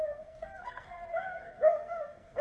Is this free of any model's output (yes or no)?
no